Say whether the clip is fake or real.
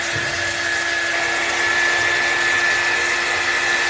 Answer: real